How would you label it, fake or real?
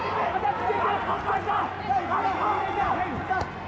real